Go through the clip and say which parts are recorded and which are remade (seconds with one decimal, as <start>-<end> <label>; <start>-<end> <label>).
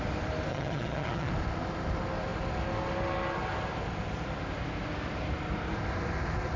0.0-0.5 recorded; 0.5-1.3 remade; 1.3-6.6 recorded